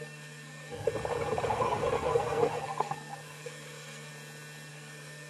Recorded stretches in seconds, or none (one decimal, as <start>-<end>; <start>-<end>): 0.9-1.5; 4.1-4.7